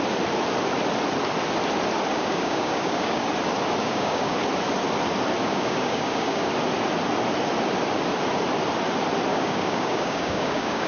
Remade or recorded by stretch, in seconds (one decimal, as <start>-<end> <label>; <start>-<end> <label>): 0.0-2.1 recorded; 2.1-3.3 remade; 3.3-3.8 recorded; 3.8-4.3 remade; 4.3-5.4 recorded; 5.4-6.5 remade; 6.5-9.3 recorded; 9.3-10.9 remade